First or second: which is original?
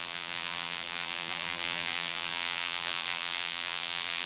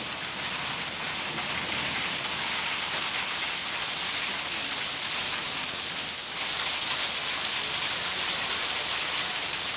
second